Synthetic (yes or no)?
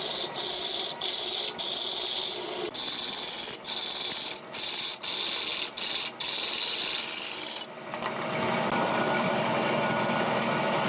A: no